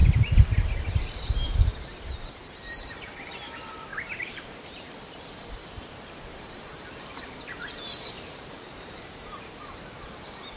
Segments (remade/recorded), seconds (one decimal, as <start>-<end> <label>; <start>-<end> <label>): 0.0-1.0 recorded; 1.0-1.7 remade; 1.7-2.7 recorded; 2.7-10.6 remade